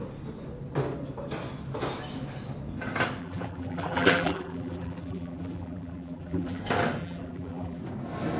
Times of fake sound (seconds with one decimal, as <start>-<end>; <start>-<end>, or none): 3.2-6.6; 7.0-7.8